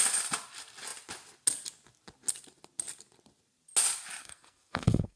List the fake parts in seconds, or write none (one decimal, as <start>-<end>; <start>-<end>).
4.2-5.2

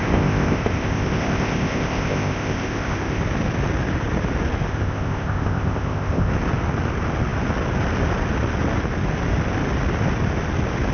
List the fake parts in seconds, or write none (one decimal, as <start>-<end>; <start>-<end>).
0.0-3.2; 4.7-6.3

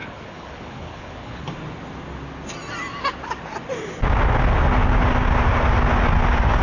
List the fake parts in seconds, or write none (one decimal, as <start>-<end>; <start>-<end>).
0.0-1.5

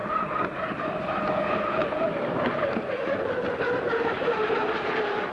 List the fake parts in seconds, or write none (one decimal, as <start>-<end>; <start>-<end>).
0.0-1.1; 1.8-5.3

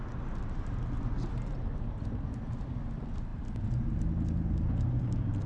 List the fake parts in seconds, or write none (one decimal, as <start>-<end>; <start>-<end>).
none

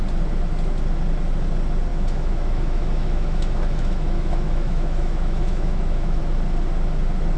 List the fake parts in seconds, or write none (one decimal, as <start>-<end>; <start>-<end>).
1.9-6.2

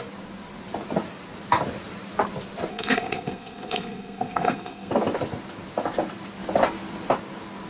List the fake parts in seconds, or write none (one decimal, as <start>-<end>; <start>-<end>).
2.7-4.9